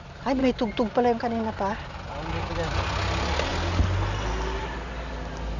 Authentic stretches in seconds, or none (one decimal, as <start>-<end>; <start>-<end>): 0.0-5.6